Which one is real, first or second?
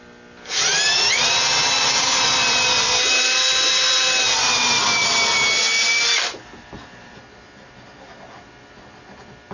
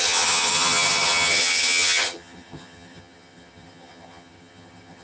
first